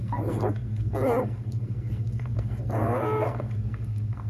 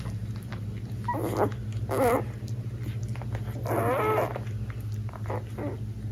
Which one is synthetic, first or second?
first